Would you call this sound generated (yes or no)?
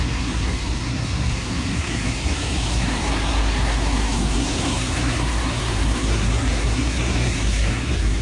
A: yes